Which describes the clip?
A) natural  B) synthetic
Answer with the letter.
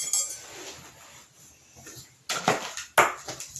A